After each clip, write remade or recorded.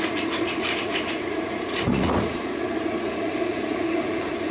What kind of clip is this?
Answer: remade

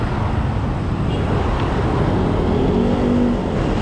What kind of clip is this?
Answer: recorded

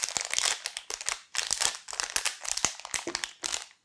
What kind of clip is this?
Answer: recorded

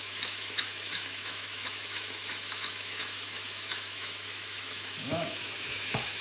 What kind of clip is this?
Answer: remade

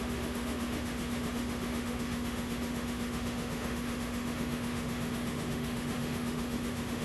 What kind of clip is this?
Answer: remade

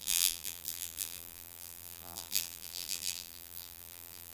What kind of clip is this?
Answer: remade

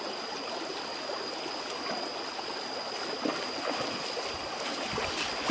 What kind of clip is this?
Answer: recorded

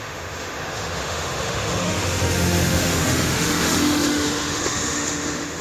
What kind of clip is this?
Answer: remade